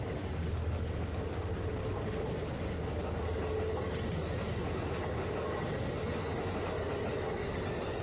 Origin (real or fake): real